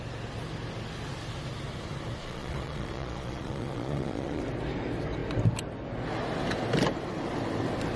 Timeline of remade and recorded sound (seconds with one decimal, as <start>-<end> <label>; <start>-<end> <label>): 0.0-2.2 recorded; 2.2-4.4 remade; 4.4-8.0 recorded